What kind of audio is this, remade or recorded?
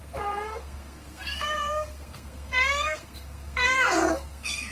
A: remade